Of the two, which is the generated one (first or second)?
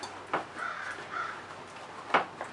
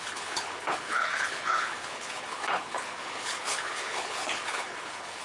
second